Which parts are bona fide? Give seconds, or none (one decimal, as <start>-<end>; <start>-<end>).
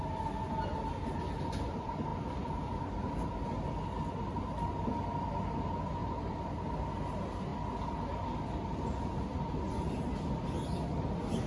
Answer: 0.0-6.0; 6.6-11.5